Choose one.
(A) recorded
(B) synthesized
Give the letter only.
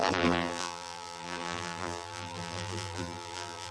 B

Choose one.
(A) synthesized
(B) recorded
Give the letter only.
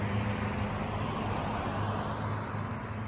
B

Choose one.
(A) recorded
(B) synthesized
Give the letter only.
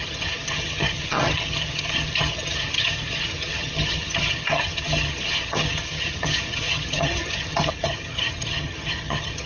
B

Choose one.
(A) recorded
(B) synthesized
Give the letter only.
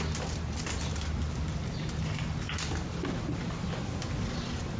A